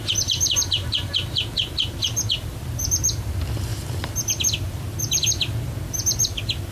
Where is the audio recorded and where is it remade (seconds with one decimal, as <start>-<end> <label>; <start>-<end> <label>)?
0.0-1.1 remade; 1.1-2.4 recorded; 2.4-6.7 remade